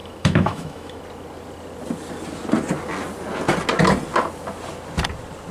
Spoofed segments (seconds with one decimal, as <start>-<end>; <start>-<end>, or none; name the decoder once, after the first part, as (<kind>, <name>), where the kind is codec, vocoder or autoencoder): 0.0-1.0 (autoencoder, DAC-VAE)